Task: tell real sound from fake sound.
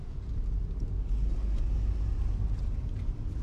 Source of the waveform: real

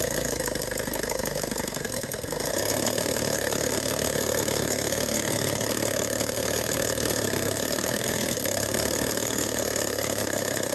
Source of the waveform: fake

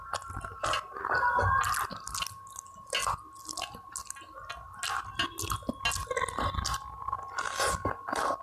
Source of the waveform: real